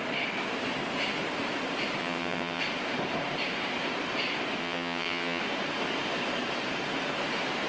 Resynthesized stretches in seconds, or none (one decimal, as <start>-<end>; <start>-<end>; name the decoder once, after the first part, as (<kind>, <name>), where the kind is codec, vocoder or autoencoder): 2.0-2.6 (vocoder, WaveNeXt); 4.6-5.4